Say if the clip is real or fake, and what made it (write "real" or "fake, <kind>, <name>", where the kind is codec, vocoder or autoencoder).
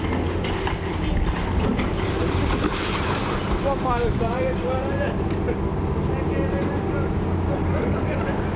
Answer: real